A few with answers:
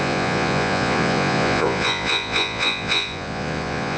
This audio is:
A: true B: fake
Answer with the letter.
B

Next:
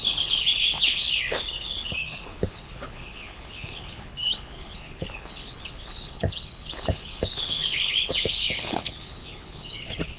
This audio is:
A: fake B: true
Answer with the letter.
A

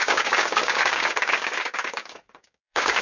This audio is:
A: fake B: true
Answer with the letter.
A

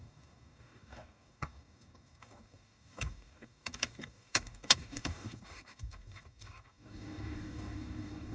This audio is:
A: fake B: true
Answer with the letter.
A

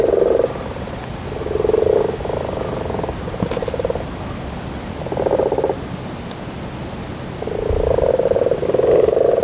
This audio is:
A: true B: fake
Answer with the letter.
A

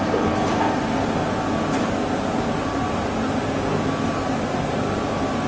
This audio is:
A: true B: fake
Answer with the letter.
A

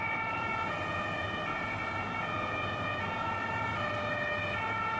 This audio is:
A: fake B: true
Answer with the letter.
B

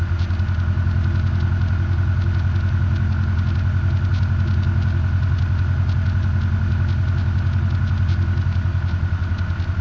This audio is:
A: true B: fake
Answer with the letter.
A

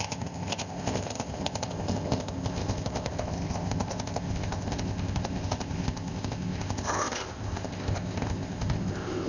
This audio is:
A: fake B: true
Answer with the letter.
A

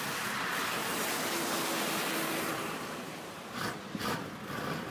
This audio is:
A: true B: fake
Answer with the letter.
B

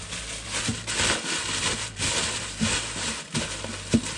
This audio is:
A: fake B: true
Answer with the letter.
B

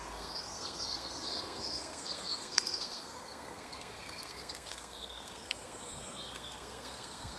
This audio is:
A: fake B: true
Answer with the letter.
A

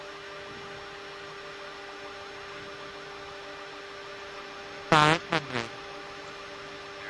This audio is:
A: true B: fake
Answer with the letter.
A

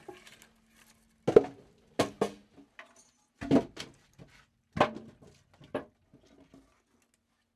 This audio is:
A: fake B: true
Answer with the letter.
B